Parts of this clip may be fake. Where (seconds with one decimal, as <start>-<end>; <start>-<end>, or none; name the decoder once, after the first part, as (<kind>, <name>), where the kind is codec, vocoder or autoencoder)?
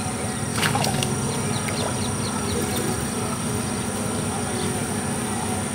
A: 0.5-1.1 (codec, DAC)